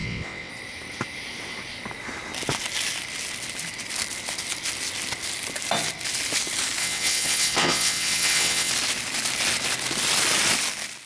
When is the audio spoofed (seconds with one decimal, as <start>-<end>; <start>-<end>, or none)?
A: 0.0-0.5; 6.8-8.7